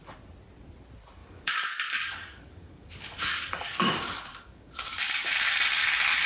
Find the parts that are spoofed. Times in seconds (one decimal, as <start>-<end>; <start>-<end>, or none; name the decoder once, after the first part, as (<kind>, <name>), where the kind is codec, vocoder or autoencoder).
1.2-5.0 (codec, DAC)

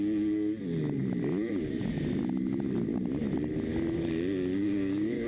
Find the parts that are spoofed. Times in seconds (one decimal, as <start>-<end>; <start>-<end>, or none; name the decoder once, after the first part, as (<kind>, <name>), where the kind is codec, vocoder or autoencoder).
4.6-5.3 (codec, DAC)

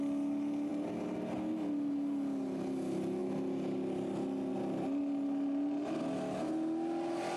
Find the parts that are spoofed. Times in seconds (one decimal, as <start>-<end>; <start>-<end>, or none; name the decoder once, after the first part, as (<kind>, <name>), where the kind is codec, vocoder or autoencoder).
none

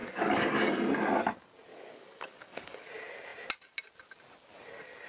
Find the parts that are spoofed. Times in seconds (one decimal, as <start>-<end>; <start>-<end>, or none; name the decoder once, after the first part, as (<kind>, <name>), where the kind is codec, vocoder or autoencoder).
0.0-0.7 (codec, DAC); 1.7-2.9